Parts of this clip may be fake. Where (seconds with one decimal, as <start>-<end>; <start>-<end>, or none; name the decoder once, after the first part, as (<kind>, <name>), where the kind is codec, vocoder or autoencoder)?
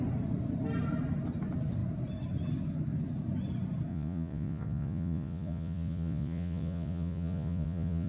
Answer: 3.9-8.1 (vocoder, Vocos)